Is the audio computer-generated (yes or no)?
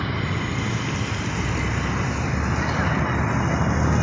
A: no